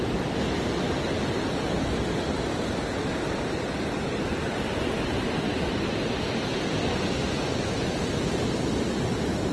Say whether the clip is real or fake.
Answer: real